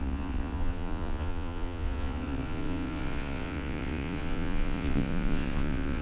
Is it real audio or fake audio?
fake